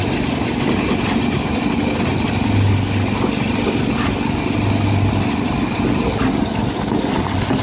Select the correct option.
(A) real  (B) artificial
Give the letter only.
A